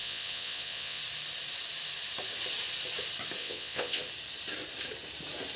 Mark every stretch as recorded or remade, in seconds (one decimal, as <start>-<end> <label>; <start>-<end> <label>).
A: 0.0-1.0 remade; 1.0-3.4 recorded; 3.4-4.0 remade; 4.0-5.6 recorded